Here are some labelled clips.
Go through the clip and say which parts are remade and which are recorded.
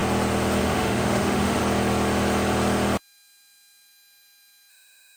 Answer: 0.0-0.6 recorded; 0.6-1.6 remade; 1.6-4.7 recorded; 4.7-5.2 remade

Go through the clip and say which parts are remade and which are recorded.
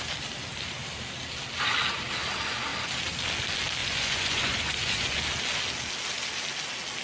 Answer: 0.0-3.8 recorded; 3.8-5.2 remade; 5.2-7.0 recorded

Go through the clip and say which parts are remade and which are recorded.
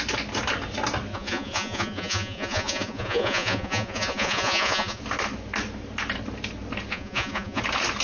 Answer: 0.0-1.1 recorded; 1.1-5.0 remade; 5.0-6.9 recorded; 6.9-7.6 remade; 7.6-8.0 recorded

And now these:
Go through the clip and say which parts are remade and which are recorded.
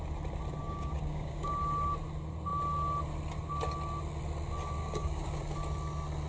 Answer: 0.0-0.6 recorded; 0.6-1.5 remade; 1.5-4.8 recorded; 4.8-5.4 remade; 5.4-6.3 recorded